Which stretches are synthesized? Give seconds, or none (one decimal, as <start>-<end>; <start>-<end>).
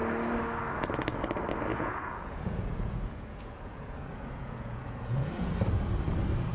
1.7-5.5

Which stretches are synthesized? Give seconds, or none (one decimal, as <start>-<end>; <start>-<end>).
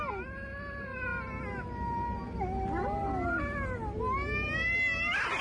none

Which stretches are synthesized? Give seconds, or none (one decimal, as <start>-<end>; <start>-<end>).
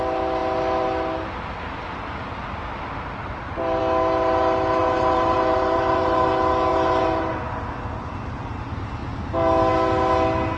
4.8-6.3; 6.7-7.3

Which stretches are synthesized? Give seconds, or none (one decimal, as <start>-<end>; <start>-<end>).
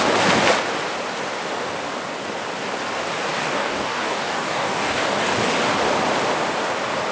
3.4-5.3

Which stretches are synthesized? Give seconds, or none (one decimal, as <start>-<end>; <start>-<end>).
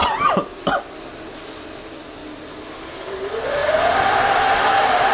none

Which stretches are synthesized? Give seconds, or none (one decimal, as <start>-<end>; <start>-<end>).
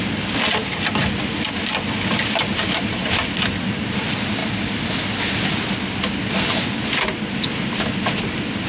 none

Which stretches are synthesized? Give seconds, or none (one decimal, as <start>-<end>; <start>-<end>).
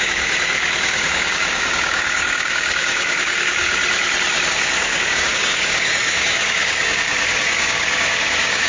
0.0-3.8; 4.5-8.7